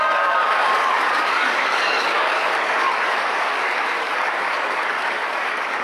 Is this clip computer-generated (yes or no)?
yes